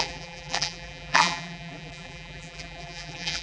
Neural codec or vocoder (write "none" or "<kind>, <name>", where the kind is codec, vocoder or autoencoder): vocoder, BigVGAN v2